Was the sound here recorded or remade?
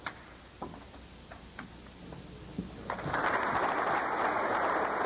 recorded